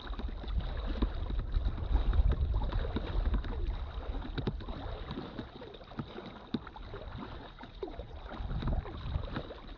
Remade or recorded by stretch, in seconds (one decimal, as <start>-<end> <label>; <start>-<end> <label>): 0.0-7.4 recorded; 7.4-8.3 remade; 8.3-9.8 recorded